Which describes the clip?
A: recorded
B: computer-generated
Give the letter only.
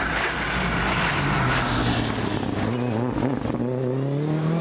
A